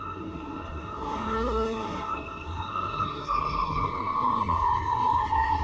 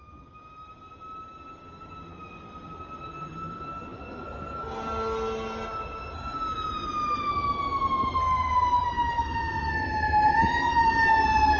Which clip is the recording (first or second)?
second